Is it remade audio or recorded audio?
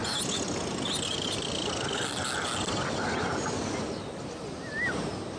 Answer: recorded